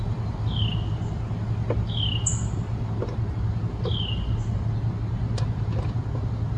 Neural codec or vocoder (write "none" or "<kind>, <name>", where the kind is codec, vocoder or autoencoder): none